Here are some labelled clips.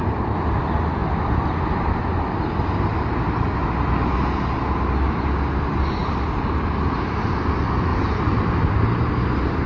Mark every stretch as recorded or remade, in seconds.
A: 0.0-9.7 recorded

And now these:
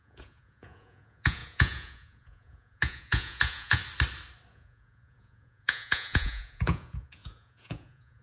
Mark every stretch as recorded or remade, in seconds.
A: 0.0-3.8 remade; 3.8-4.5 recorded; 4.5-8.2 remade